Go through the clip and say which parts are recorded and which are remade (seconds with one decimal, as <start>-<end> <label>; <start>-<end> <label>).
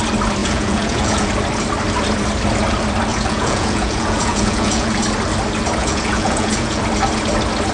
0.0-0.4 recorded; 0.4-1.3 remade; 1.3-3.1 recorded; 3.1-5.0 remade; 5.0-5.8 recorded; 5.8-6.8 remade; 6.8-7.7 recorded